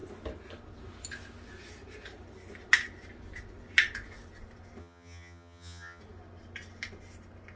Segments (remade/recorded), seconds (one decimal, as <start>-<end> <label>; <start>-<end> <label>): 0.0-4.8 recorded; 4.8-6.0 remade; 6.0-7.6 recorded